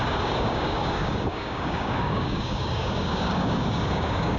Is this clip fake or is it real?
fake